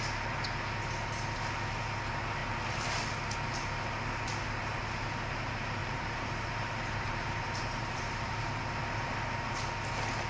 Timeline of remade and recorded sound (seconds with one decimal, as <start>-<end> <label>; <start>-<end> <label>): 0.0-5.8 recorded; 5.8-8.6 remade; 8.6-10.3 recorded